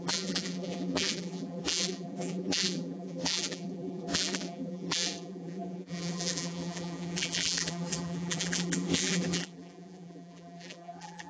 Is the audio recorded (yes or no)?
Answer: no